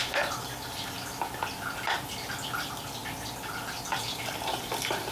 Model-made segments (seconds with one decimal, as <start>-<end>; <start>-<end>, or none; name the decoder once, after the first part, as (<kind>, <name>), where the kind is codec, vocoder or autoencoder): none